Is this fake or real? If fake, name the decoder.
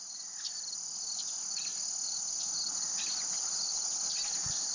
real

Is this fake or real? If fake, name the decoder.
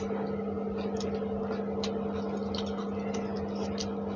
real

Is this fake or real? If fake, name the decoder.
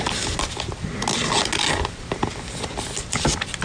real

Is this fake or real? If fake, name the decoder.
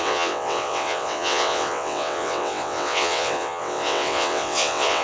fake, vocoder, WaveNeXt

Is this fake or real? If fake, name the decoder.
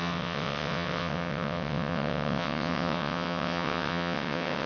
fake, vocoder, WaveNeXt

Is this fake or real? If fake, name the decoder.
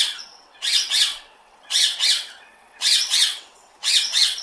fake, vocoder, WaveNeXt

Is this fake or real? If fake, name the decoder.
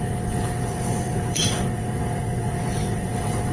fake, vocoder, WaveNeXt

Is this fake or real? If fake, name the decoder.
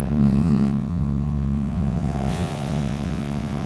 fake, vocoder, WaveNeXt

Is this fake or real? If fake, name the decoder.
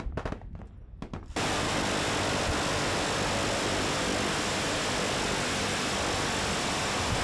real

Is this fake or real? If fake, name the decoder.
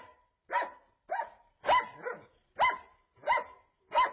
real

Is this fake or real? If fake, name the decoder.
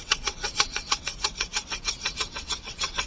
fake, vocoder, WaveNeXt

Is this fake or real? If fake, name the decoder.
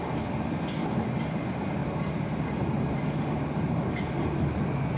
real